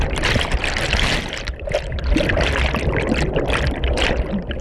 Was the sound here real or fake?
real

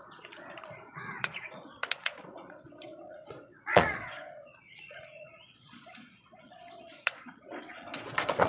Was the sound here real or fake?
fake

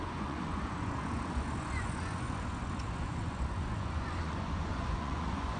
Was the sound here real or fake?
fake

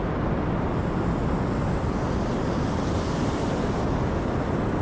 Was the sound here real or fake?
real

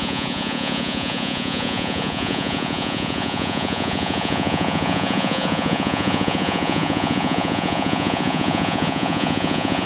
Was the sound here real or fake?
fake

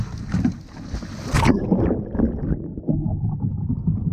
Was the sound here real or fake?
real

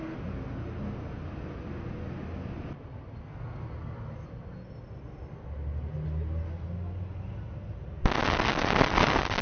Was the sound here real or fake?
real